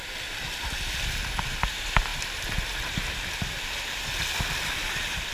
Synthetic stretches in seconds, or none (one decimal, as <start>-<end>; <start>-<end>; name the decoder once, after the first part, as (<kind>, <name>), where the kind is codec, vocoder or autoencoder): 0.0-5.3 (vocoder, BigVGAN v2)